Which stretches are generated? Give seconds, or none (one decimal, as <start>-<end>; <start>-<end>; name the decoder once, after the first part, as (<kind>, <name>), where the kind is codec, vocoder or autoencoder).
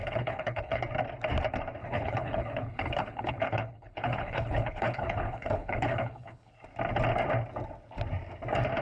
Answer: 0.0-0.8 (codec, HILCodec); 1.8-6.5